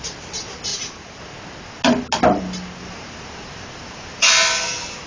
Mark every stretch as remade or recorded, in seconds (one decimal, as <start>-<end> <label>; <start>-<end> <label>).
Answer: 0.0-0.7 recorded; 0.7-1.2 remade; 1.2-2.8 recorded; 2.8-4.3 remade; 4.3-5.1 recorded